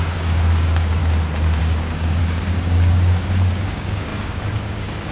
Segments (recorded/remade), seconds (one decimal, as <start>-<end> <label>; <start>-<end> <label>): 0.0-1.0 remade; 1.0-1.6 recorded; 1.6-5.1 remade